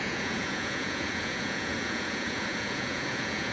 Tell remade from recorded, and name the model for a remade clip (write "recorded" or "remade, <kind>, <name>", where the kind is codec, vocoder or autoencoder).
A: remade, vocoder, Vocos